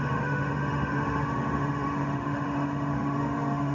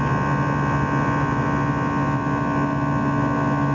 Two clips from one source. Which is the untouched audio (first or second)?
second